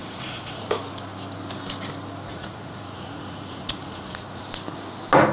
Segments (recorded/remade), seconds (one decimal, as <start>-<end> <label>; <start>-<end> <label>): 0.0-0.6 remade; 0.6-2.3 recorded; 2.3-4.4 remade; 4.4-5.3 recorded